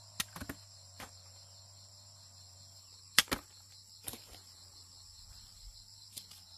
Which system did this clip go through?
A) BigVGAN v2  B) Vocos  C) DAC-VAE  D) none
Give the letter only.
D